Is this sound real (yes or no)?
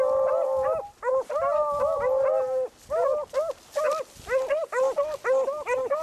yes